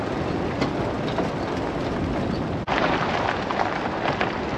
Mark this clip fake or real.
real